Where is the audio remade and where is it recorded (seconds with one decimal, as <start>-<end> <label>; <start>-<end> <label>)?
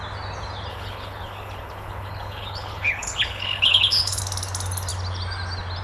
0.0-0.7 recorded; 0.7-4.2 remade; 4.2-5.8 recorded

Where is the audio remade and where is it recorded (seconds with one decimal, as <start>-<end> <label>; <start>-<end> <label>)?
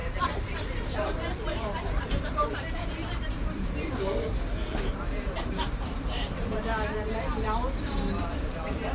0.0-6.7 remade; 6.7-8.2 recorded; 8.2-8.9 remade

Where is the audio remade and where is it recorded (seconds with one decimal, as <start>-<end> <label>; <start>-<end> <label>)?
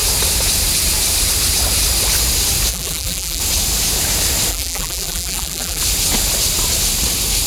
0.0-2.7 recorded; 2.7-3.4 remade; 3.4-4.5 recorded; 4.5-5.8 remade; 5.8-7.5 recorded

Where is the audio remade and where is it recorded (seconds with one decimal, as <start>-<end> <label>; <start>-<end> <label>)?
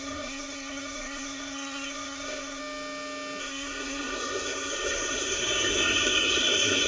0.0-2.6 remade; 2.6-3.4 recorded; 3.4-6.9 remade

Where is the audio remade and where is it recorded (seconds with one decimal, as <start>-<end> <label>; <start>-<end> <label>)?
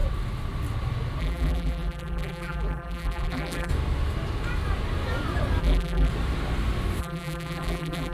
0.0-1.2 recorded; 1.2-3.7 remade; 3.7-5.6 recorded; 5.6-6.1 remade; 6.1-7.0 recorded; 7.0-8.1 remade